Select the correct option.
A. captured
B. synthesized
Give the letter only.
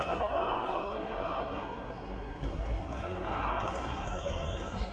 B